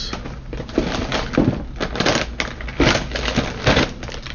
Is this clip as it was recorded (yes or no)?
yes